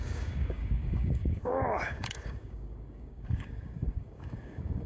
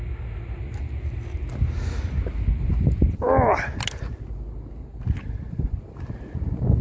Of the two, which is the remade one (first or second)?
first